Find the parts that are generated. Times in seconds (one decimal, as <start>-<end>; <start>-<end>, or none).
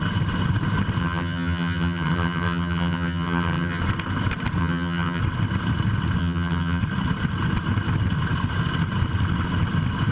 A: 1.0-3.8; 4.6-5.2; 6.2-6.8